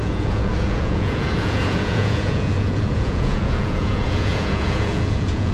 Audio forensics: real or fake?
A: fake